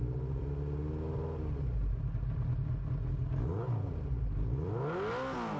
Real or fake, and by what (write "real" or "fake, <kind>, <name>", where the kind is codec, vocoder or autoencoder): real